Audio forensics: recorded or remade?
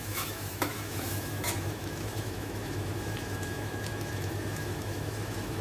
remade